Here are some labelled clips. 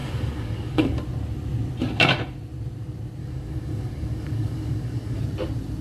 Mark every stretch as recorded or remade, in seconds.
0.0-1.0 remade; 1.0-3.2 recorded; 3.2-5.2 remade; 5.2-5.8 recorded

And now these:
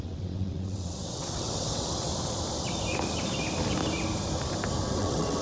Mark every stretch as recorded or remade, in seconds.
0.0-2.1 remade; 2.1-4.9 recorded; 4.9-5.4 remade

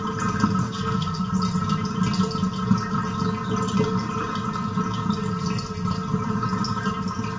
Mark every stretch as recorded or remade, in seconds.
0.0-0.6 recorded; 0.6-1.2 remade; 1.2-7.4 recorded

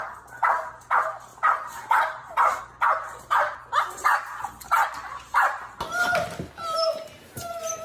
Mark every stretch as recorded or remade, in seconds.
0.0-7.8 recorded